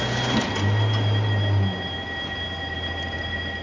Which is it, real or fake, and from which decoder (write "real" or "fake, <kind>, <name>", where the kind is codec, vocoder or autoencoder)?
real